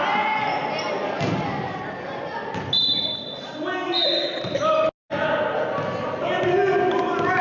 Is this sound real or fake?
real